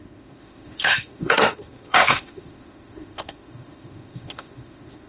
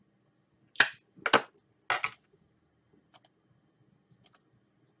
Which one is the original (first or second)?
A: second